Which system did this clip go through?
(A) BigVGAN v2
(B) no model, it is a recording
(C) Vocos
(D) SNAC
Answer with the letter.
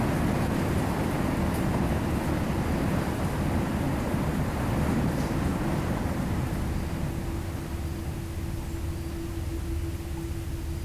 B